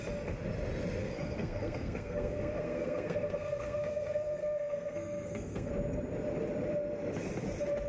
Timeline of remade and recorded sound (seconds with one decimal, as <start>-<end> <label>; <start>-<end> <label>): 0.0-1.0 recorded; 1.0-5.7 remade; 5.7-7.9 recorded